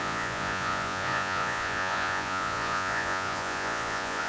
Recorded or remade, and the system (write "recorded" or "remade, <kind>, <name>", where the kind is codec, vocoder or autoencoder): remade, vocoder, Vocos